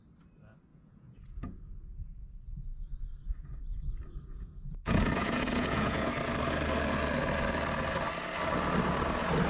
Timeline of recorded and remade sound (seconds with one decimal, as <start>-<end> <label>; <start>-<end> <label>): 0.0-0.7 recorded; 0.7-2.3 remade; 2.3-4.3 recorded; 4.3-6.1 remade; 6.1-9.5 recorded